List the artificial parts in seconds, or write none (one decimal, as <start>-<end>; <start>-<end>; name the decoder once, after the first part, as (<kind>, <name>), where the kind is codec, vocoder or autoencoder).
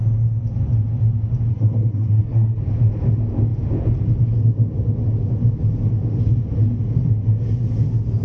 1.5-2.6 (codec, SNAC)